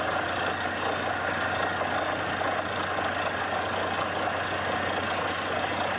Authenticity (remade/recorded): recorded